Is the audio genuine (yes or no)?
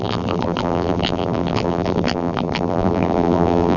no